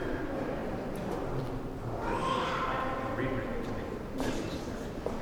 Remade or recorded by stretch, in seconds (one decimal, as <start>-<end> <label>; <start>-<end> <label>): 0.0-0.6 recorded; 0.6-1.4 remade; 1.4-2.2 recorded; 2.2-2.8 remade; 2.8-3.5 recorded; 3.5-4.7 remade; 4.7-5.2 recorded